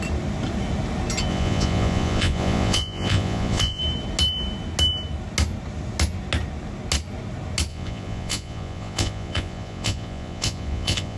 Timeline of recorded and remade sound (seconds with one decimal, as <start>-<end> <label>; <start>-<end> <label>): 0.0-1.3 recorded; 1.3-3.8 remade; 3.8-7.7 recorded; 7.7-11.2 remade